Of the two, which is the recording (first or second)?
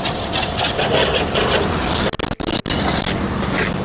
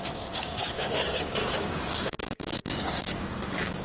first